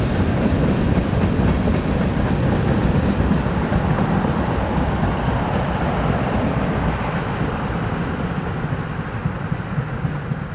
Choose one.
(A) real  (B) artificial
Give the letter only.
B